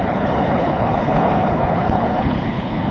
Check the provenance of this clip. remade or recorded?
remade